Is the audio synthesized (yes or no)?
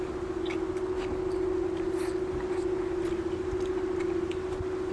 no